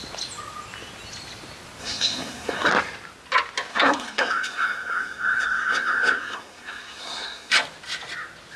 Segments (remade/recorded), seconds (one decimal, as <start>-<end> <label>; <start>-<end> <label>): 0.0-1.8 recorded; 1.8-2.7 remade; 2.7-3.7 recorded; 3.7-7.5 remade; 7.5-8.6 recorded